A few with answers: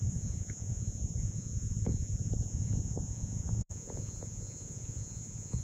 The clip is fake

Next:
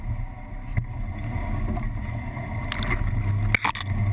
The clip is real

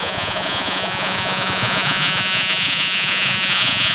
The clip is fake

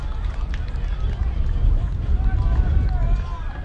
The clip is real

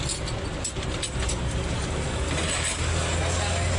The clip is real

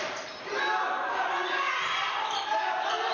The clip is real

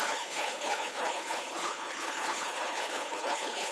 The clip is fake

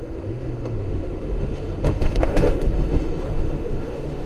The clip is fake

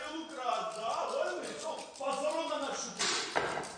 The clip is real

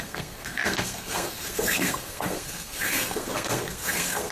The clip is fake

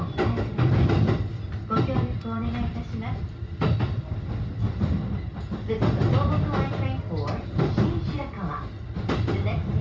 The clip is real